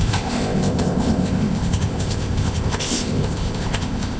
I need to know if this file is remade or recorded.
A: remade